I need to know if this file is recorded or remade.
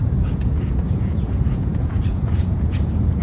remade